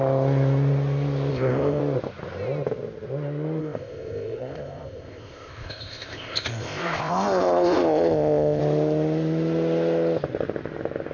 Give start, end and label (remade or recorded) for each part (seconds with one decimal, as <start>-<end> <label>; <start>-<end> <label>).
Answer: 0.0-1.3 recorded; 1.3-1.8 remade; 1.8-3.6 recorded; 3.6-8.6 remade; 8.6-11.1 recorded